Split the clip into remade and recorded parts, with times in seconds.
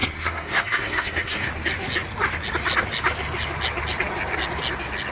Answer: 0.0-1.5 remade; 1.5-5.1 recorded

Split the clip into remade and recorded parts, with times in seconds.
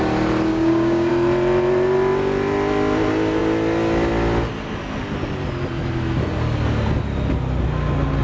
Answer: 0.0-0.5 recorded; 0.5-1.1 remade; 1.1-8.2 recorded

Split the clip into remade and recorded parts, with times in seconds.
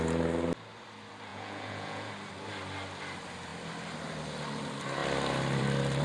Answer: 0.0-1.3 recorded; 1.3-2.1 remade; 2.1-6.0 recorded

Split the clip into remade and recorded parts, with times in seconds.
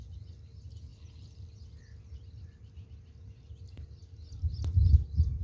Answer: 0.0-5.4 recorded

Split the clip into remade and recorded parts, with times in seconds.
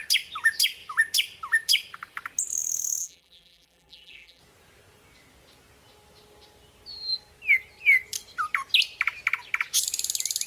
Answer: 0.0-3.0 recorded; 3.0-4.4 remade; 4.4-10.5 recorded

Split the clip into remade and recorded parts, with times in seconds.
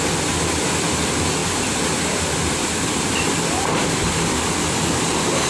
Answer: 0.0-5.5 recorded